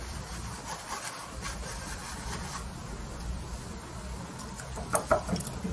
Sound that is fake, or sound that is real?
real